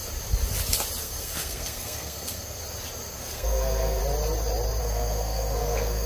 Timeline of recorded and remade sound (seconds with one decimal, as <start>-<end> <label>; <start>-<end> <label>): 0.0-1.0 recorded; 1.0-2.6 remade; 2.6-3.1 recorded; 3.1-4.0 remade; 4.0-4.8 recorded; 4.8-6.1 remade